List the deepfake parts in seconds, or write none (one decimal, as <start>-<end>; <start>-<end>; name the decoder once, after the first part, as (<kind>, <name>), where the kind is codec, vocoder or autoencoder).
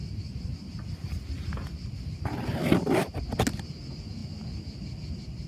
none